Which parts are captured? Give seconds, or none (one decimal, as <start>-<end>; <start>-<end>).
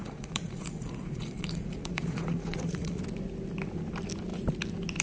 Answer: 3.0-5.0